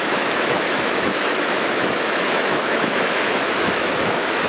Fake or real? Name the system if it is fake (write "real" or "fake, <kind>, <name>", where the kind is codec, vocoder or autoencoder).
fake, autoencoder, DAC-VAE